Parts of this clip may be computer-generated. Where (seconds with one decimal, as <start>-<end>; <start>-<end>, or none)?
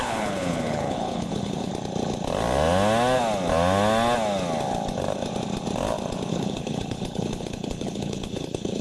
0.0-1.7; 6.3-8.8